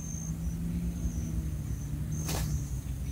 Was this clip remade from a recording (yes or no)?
no